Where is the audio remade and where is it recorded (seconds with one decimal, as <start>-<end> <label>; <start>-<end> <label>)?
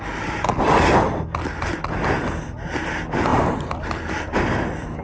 0.0-3.3 recorded; 3.3-4.1 remade; 4.1-5.0 recorded